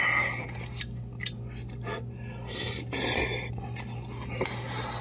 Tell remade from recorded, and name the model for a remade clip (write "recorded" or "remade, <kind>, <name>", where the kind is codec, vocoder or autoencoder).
recorded